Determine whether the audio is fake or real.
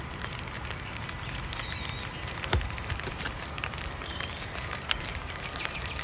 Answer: fake